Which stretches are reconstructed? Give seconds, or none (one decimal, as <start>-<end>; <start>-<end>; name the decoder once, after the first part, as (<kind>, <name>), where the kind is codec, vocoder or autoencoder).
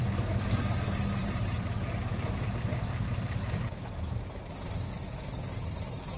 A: 1.2-4.8 (vocoder, BigVGAN v2)